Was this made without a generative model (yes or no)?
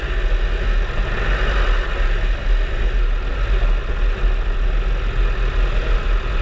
yes